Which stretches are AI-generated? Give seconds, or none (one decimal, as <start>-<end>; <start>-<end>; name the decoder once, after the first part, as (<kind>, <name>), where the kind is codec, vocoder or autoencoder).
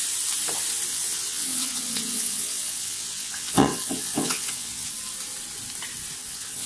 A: 0.9-4.9 (vocoder, WaveNeXt); 6.2-6.7